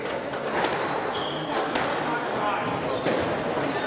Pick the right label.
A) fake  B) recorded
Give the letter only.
B